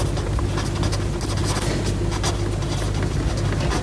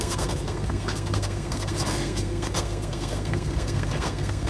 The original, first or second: first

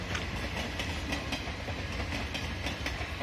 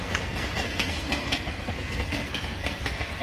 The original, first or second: first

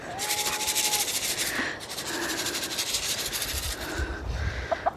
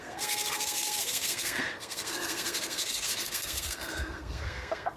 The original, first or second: first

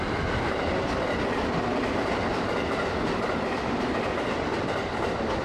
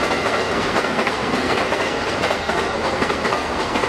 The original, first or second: first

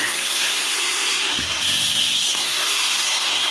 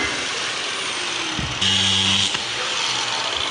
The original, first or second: second